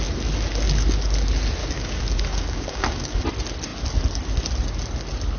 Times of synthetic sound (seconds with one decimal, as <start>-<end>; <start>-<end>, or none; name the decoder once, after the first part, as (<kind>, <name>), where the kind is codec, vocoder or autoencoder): 1.6-3.2 (codec, DAC)